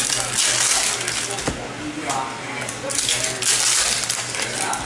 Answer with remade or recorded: recorded